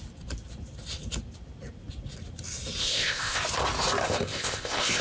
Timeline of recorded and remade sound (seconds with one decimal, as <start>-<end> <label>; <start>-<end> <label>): 0.0-2.8 recorded; 2.8-3.4 remade; 3.4-4.0 recorded; 4.0-5.0 remade